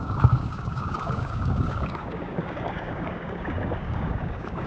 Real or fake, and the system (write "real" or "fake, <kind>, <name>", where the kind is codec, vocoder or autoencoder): fake, codec, DAC